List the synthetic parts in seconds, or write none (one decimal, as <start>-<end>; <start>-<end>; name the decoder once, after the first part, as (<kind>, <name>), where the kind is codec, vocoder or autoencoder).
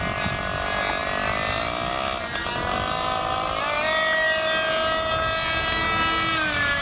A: none